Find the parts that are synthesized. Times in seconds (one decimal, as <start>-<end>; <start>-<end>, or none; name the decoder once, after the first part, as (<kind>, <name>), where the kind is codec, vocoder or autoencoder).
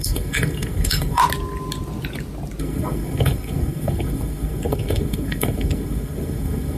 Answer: 0.0-1.2 (codec, SNAC); 2.6-6.8